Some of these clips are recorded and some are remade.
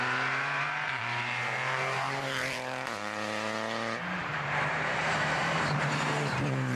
remade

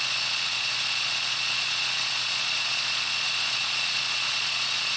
remade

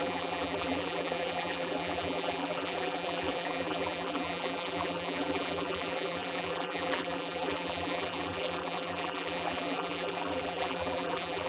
remade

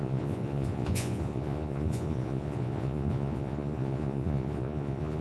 remade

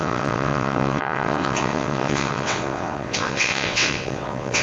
remade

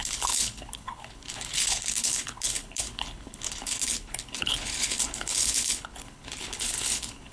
remade